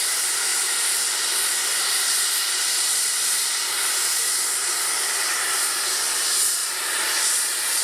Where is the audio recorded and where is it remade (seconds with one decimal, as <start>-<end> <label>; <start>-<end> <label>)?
0.0-0.5 recorded; 0.5-1.0 remade; 1.0-1.8 recorded; 1.8-4.7 remade; 4.7-6.6 recorded; 6.6-7.8 remade